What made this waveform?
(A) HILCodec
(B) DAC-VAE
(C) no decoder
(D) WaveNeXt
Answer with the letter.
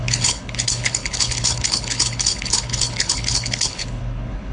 A